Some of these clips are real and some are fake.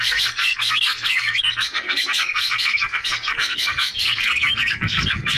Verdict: fake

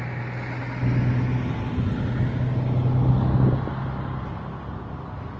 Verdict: real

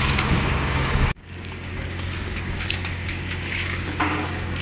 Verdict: fake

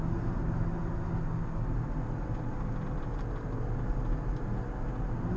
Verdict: real